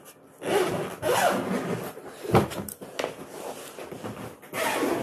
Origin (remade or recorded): recorded